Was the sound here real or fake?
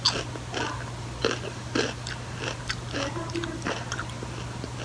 real